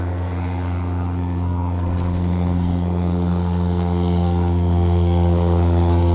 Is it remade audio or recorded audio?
remade